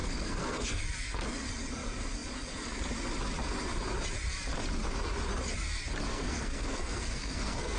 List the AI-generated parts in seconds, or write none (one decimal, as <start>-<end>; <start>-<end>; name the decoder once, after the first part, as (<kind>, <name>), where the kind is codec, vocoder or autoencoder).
0.0-0.8 (codec, SNAC); 6.1-7.8